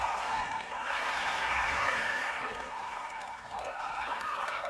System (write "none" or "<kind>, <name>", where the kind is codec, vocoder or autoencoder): codec, SNAC